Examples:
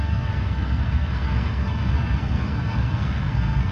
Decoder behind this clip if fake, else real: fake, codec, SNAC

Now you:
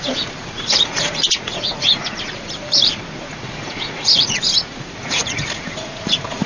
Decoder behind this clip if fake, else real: fake, vocoder, Vocos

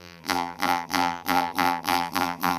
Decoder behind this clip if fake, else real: fake, vocoder, BigVGAN v2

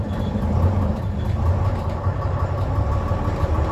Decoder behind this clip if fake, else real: real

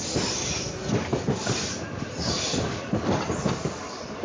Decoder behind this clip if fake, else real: real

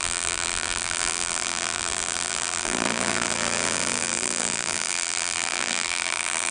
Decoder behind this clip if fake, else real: fake, vocoder, BigVGAN v2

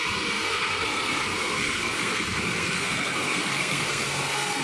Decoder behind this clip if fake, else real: fake, codec, SNAC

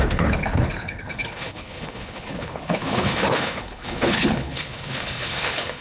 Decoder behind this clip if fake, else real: fake, codec, HILCodec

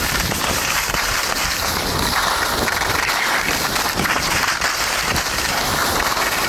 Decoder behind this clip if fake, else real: real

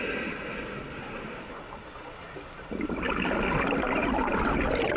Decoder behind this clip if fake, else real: real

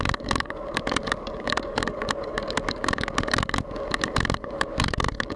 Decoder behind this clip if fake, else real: fake, codec, DAC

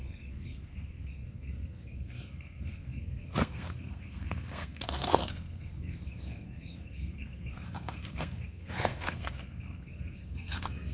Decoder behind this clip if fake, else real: fake, codec, SNAC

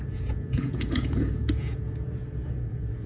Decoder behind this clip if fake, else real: fake, vocoder, Vocos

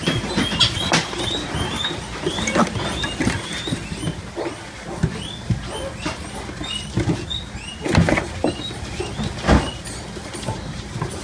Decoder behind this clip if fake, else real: real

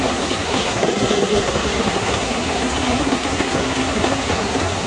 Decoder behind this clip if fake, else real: fake, codec, SNAC